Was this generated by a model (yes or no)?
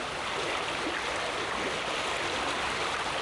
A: no